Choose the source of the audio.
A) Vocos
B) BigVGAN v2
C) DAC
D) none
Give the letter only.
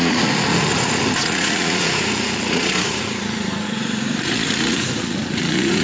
A